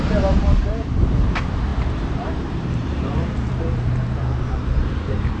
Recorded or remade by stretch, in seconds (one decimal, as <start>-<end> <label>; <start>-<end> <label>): 0.0-5.4 remade

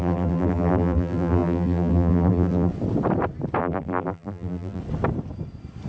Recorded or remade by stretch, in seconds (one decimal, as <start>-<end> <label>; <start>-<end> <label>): 0.0-2.7 remade; 2.7-3.6 recorded; 3.6-4.8 remade; 4.8-5.9 recorded

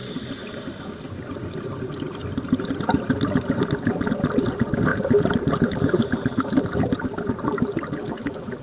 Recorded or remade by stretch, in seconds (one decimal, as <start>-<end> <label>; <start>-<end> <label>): 0.0-4.9 recorded; 4.9-7.2 remade; 7.2-8.6 recorded

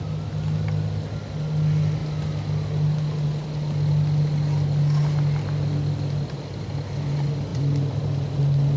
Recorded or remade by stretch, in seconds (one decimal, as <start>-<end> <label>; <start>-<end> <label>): 0.0-7.5 recorded; 7.5-8.4 remade; 8.4-8.8 recorded

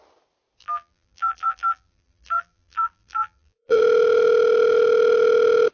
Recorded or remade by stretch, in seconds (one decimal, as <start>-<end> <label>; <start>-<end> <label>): 0.0-0.6 recorded; 0.6-3.8 remade; 3.8-5.7 recorded

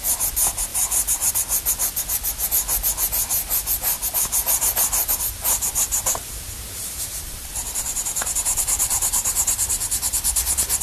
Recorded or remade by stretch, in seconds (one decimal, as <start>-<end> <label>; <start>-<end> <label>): 0.0-0.7 recorded; 0.7-1.3 remade; 1.3-5.0 recorded; 5.0-10.2 remade; 10.2-10.8 recorded

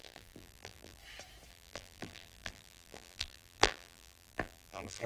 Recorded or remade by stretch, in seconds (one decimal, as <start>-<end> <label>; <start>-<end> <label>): 0.0-1.0 remade; 1.0-1.5 recorded; 1.5-5.1 remade